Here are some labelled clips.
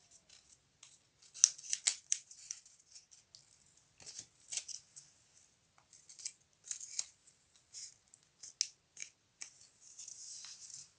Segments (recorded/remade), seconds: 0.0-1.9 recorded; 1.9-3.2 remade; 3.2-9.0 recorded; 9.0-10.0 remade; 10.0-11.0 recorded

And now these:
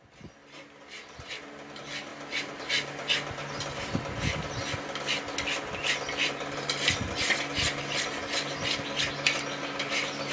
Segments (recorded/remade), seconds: 0.0-10.3 recorded

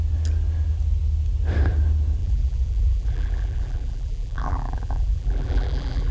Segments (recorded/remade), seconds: 0.0-2.2 recorded; 2.2-6.1 remade

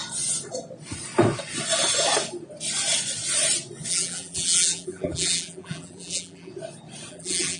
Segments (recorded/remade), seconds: 0.0-3.9 recorded; 3.9-6.5 remade; 6.5-7.1 recorded; 7.1-7.6 remade

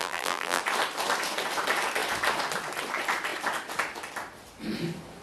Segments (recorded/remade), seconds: 0.0-0.6 remade; 0.6-5.2 recorded

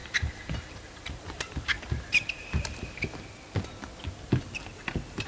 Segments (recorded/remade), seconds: 0.0-3.2 remade; 3.2-5.3 recorded

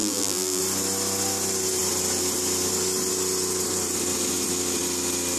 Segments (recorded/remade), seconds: 0.0-0.6 remade; 0.6-5.4 recorded